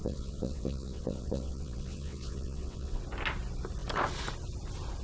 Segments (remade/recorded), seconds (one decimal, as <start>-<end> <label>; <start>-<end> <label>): 0.0-3.0 remade; 3.0-5.0 recorded